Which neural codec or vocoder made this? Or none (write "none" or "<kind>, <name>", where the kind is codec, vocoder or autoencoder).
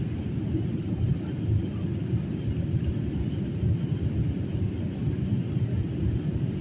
none